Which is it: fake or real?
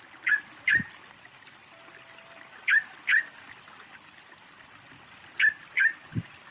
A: real